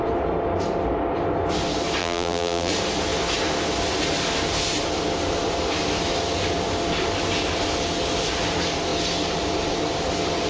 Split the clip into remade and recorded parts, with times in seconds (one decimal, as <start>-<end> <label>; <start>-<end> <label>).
0.0-2.0 recorded; 2.0-2.7 remade; 2.7-10.5 recorded

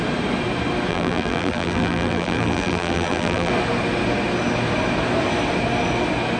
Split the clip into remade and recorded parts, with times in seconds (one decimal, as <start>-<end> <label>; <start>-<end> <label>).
0.0-0.9 recorded; 0.9-3.5 remade; 3.5-6.4 recorded

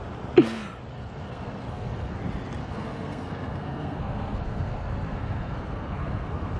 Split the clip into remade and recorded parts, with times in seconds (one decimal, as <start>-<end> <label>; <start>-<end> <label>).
0.0-0.9 recorded; 0.9-2.2 remade; 2.2-2.6 recorded; 2.6-6.6 remade

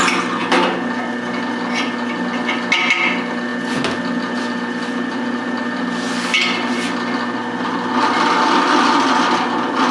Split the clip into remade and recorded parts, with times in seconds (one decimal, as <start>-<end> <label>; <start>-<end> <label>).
0.0-9.9 recorded

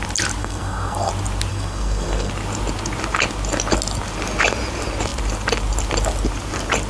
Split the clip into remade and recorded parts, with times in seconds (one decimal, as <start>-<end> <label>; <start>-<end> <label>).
0.0-0.4 recorded; 0.4-1.1 remade; 1.1-1.5 recorded; 1.5-2.3 remade; 2.3-6.9 recorded

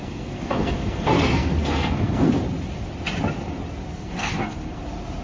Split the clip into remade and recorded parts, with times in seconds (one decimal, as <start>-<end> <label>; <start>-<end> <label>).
0.0-2.3 remade; 2.3-3.9 recorded; 3.9-4.8 remade; 4.8-5.2 recorded